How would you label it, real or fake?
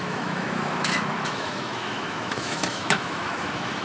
fake